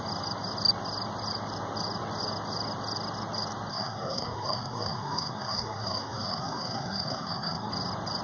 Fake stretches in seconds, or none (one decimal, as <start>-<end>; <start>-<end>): 3.7-7.7